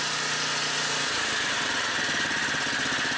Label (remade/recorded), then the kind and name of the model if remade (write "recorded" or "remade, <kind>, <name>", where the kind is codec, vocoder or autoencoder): recorded